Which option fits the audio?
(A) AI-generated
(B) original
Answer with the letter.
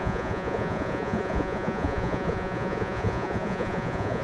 A